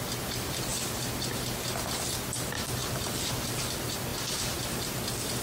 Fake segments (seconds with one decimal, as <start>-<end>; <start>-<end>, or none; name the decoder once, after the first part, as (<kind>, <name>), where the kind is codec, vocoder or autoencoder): 0.7-1.4 (vocoder, BigVGAN v2)